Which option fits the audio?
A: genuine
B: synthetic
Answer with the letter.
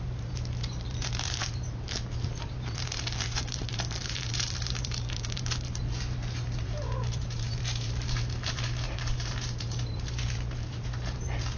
B